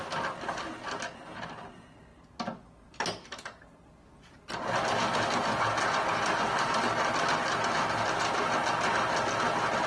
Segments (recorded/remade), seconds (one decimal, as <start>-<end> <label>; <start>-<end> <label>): 0.0-9.9 recorded

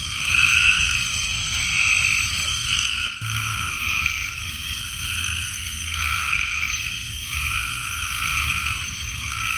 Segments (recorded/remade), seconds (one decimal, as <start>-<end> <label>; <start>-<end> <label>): 0.0-1.6 remade; 1.6-2.3 recorded; 2.3-9.6 remade

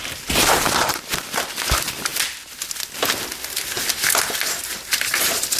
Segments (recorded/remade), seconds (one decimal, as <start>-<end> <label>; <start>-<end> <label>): 0.0-2.1 remade; 2.1-5.6 recorded

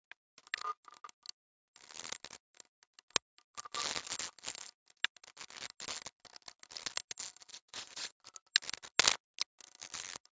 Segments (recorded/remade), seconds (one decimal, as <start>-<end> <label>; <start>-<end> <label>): 0.0-7.5 recorded; 7.5-8.1 remade; 8.1-10.4 recorded

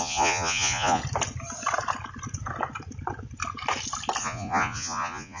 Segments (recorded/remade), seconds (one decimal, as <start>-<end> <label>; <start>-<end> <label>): 0.0-1.0 remade; 1.0-4.2 recorded; 4.2-5.4 remade

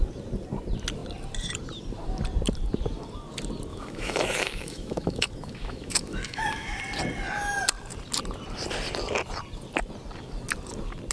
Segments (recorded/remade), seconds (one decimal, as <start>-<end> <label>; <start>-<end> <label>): 0.0-3.7 recorded; 3.7-6.8 remade; 6.8-11.1 recorded

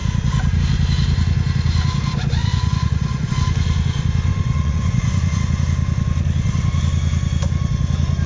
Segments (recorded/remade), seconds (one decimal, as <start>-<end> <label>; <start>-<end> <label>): 0.0-2.4 recorded; 2.4-3.3 remade; 3.3-4.3 recorded; 4.3-5.4 remade; 5.4-8.3 recorded

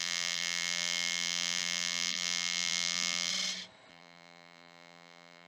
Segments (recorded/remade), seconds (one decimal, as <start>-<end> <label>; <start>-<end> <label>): 0.0-3.3 remade; 3.3-3.9 recorded; 3.9-5.5 remade